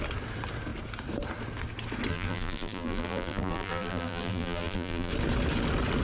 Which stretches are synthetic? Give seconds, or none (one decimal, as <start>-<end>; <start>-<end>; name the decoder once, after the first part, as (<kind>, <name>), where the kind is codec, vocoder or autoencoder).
2.1-5.1 (vocoder, BigVGAN v2)

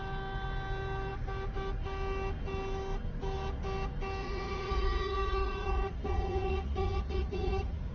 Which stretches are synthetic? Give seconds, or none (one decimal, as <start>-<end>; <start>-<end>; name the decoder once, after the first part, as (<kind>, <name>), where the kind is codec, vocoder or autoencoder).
4.2-7.9 (vocoder, Vocos)

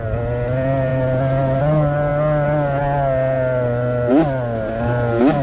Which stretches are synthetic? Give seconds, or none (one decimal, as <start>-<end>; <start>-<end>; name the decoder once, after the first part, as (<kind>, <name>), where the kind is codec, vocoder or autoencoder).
none

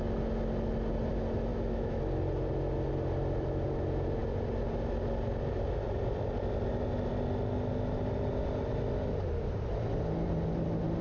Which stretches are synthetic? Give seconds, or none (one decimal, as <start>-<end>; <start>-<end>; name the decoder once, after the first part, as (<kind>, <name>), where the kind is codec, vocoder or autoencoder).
1.5-2.0 (autoencoder, DAC-VAE)

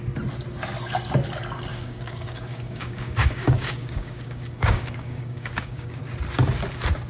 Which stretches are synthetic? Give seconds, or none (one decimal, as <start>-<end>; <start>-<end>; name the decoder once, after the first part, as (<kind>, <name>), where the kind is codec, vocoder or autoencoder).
1.7-6.0 (codec, DAC)

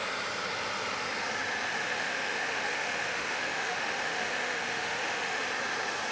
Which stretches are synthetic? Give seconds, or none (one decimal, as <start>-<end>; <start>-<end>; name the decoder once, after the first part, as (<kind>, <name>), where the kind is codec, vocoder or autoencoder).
1.7-5.4 (autoencoder, DAC-VAE)

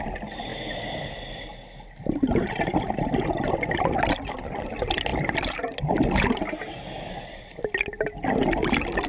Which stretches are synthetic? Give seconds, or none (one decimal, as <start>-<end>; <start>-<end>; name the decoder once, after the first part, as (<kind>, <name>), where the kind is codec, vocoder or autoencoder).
none